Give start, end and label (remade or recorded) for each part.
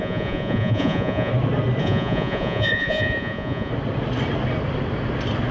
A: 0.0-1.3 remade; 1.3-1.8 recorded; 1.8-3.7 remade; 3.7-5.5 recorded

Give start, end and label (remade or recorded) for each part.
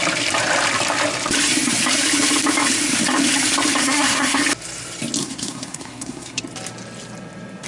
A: 0.0-3.8 recorded; 3.8-4.4 remade; 4.4-5.2 recorded; 5.2-6.4 remade; 6.4-7.7 recorded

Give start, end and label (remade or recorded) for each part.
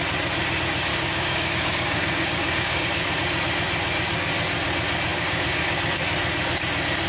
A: 0.0-0.9 recorded; 0.9-3.2 remade; 3.2-5.1 recorded; 5.1-5.6 remade; 5.6-7.1 recorded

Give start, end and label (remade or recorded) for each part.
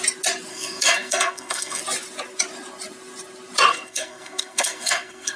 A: 0.0-0.5 recorded; 0.5-1.8 remade; 1.8-3.7 recorded; 3.7-5.4 remade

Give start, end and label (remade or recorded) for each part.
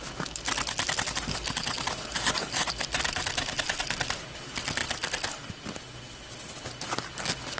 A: 0.0-7.6 recorded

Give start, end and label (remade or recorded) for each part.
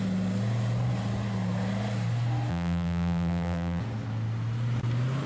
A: 0.0-2.5 recorded; 2.5-3.8 remade; 3.8-5.3 recorded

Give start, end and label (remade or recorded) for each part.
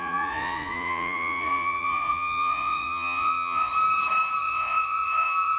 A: 0.0-3.7 remade; 3.7-4.4 recorded; 4.4-5.6 remade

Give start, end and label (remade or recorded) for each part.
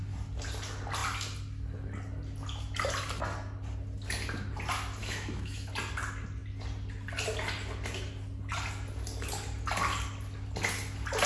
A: 0.0-5.0 recorded; 5.0-5.7 remade; 5.7-11.3 recorded